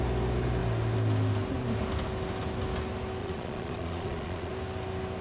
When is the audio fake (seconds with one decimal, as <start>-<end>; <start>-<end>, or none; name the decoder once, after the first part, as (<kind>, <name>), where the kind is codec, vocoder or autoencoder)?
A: 3.2-4.5 (vocoder, Vocos)